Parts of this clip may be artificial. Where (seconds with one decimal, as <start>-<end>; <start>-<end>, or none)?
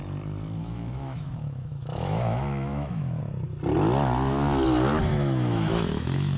0.6-3.2; 5.1-6.4